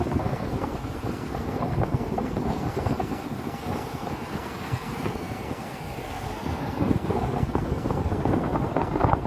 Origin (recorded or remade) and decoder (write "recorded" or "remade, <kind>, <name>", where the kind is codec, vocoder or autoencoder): remade, codec, SNAC